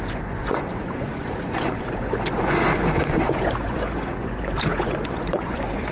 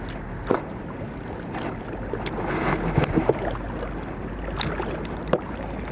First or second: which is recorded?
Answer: second